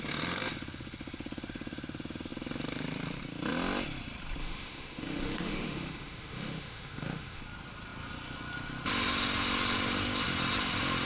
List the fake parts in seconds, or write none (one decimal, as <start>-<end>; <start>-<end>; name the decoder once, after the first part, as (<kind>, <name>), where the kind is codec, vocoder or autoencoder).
4.4-7.4 (autoencoder, DAC-VAE)